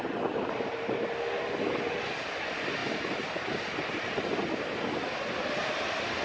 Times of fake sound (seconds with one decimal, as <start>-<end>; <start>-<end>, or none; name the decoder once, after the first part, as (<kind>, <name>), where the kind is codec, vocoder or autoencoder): none